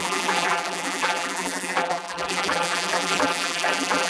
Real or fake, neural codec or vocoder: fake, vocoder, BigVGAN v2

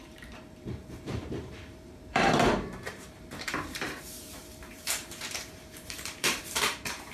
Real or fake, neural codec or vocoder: fake, vocoder, BigVGAN v2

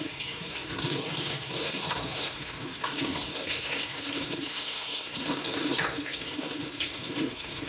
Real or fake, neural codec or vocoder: fake, codec, SNAC